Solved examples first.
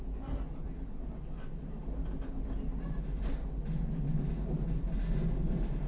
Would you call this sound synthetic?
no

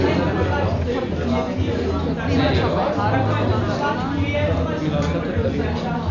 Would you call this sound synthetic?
no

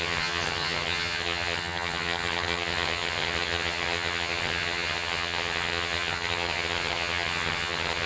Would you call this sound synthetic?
yes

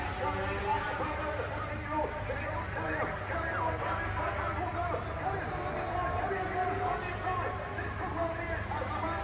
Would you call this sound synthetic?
no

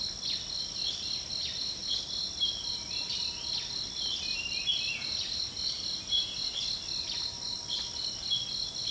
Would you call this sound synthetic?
no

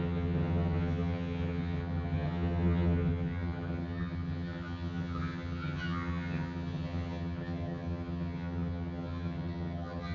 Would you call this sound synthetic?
yes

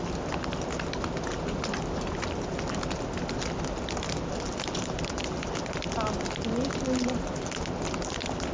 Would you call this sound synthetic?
no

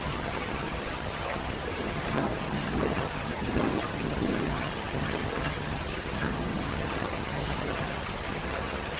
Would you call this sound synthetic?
yes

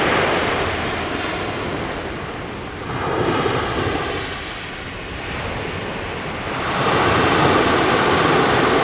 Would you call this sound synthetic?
no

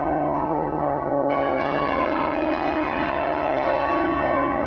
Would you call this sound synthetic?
yes